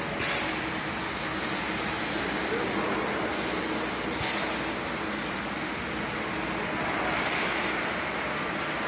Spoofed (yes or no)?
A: no